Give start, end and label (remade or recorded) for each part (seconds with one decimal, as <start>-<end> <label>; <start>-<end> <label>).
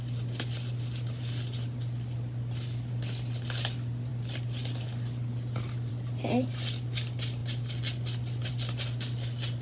0.0-9.6 recorded